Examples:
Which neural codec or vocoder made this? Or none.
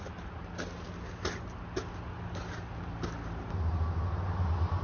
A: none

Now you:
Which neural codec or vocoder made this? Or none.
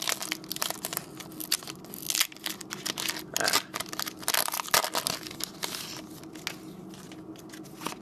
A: none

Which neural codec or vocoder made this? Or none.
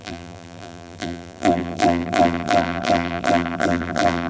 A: vocoder, BigVGAN v2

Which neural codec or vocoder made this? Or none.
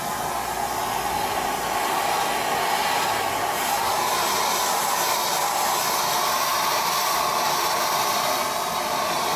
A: vocoder, BigVGAN v2